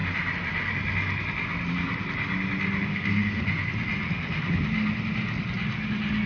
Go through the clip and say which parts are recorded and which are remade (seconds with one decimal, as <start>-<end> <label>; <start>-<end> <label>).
0.0-2.9 recorded; 2.9-3.5 remade; 3.5-6.3 recorded